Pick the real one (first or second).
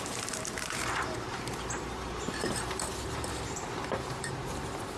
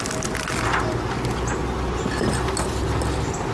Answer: second